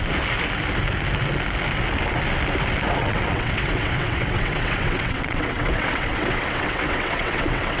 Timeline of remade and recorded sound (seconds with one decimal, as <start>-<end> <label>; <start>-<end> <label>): 0.0-3.0 recorded; 3.0-7.8 remade